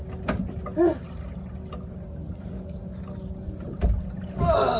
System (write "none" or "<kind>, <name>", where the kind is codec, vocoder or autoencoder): none